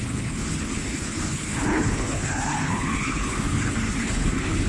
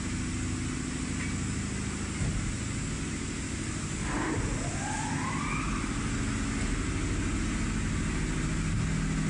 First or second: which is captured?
second